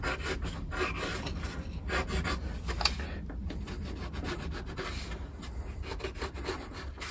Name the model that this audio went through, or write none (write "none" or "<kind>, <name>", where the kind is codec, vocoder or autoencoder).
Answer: none